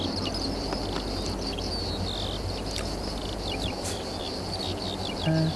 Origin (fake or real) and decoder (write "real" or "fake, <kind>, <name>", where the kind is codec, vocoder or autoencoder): real